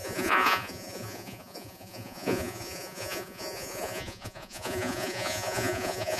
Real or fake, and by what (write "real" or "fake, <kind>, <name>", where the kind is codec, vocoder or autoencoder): fake, vocoder, Vocos